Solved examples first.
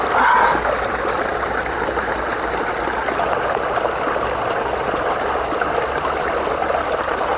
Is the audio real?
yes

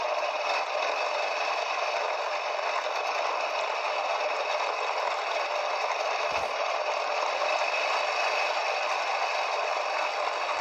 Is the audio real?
yes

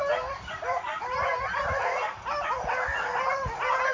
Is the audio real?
yes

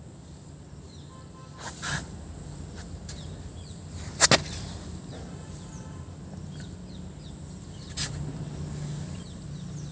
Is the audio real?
yes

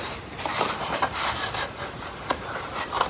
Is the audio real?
yes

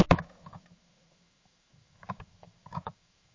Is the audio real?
no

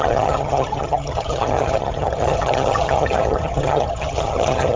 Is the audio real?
no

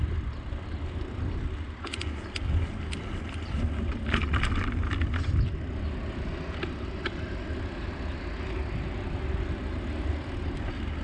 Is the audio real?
yes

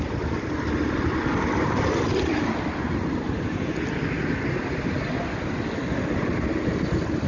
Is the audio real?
yes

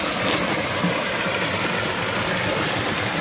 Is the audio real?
yes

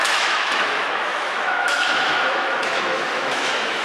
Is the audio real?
no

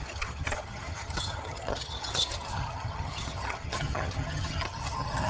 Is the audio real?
no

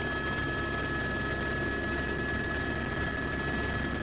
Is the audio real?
yes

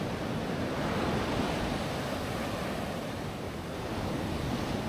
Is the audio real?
yes